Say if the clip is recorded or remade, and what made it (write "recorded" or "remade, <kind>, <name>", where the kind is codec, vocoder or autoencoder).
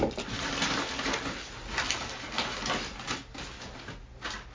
recorded